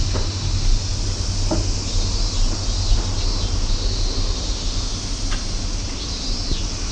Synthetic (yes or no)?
no